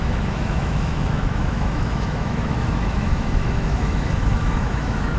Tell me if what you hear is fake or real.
fake